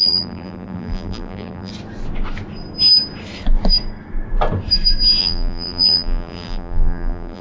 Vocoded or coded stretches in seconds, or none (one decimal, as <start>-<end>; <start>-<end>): 0.0-1.7; 5.2-7.4